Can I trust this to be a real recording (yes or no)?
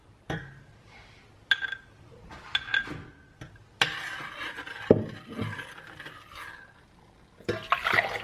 yes